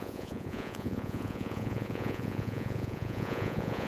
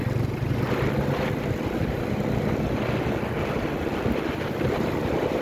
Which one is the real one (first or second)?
second